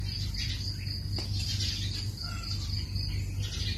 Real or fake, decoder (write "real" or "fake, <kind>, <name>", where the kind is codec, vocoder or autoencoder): real